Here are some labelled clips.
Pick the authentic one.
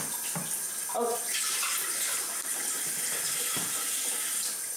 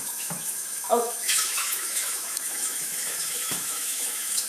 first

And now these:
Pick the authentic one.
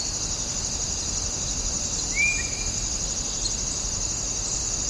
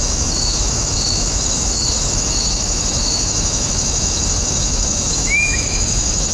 first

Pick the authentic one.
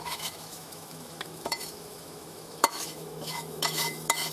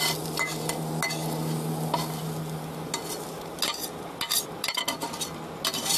second